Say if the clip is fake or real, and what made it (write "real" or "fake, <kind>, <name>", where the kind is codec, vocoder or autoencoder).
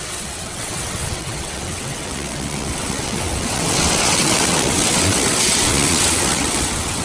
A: fake, vocoder, WaveNeXt